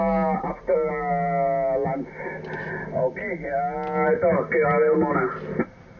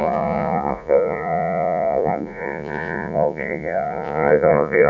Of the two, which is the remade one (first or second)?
second